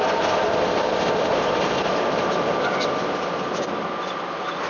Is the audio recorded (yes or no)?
yes